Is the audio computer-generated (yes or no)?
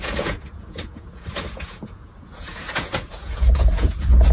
yes